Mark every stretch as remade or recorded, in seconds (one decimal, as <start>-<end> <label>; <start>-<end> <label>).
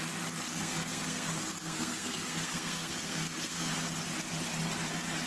0.0-0.5 recorded; 0.5-3.7 remade; 3.7-5.3 recorded